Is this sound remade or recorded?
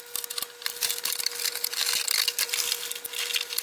recorded